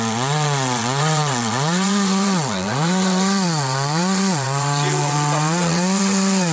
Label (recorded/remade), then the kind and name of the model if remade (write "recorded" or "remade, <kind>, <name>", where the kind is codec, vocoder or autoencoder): remade, vocoder, WaveNeXt